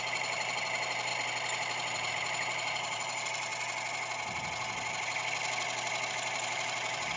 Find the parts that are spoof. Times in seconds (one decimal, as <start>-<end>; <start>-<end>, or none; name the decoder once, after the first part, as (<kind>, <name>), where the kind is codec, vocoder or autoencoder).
0.0-1.1 (vocoder, BigVGAN v2); 2.1-3.5; 6.1-7.2